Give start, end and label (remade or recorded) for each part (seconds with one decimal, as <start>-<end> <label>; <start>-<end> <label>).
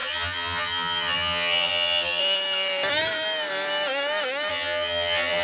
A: 0.0-2.2 remade; 2.2-4.5 recorded; 4.5-5.4 remade